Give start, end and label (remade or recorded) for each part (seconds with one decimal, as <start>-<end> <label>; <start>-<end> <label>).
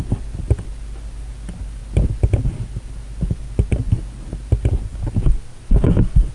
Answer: 0.0-6.3 recorded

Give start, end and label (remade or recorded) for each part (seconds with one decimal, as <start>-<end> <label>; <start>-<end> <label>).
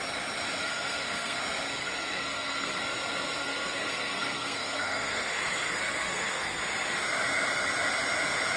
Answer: 0.0-0.6 recorded; 0.6-1.4 remade; 1.4-1.8 recorded; 1.8-2.8 remade; 2.8-3.4 recorded; 3.4-6.6 remade; 6.6-8.6 recorded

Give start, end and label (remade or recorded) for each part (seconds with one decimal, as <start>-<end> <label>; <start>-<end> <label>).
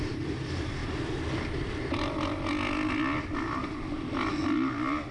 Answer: 0.0-5.1 recorded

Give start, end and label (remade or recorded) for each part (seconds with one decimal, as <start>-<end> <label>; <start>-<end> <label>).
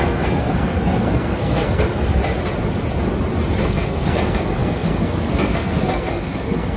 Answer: 0.0-2.2 remade; 2.2-3.5 recorded; 3.5-6.8 remade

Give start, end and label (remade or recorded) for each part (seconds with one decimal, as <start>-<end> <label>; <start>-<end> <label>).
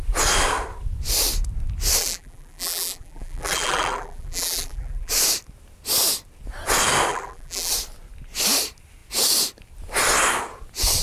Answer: 0.0-2.0 recorded; 2.0-5.1 remade; 5.1-7.1 recorded; 7.1-7.7 remade; 7.7-11.0 recorded